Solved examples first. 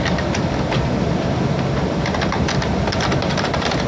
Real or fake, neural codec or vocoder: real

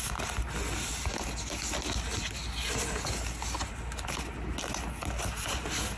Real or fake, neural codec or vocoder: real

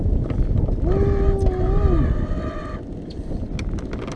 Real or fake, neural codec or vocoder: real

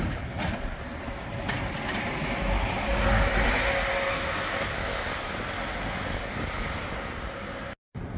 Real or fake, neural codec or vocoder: real